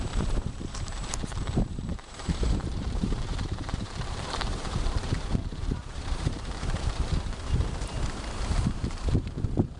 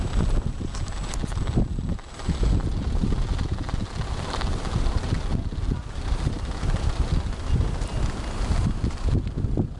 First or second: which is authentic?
second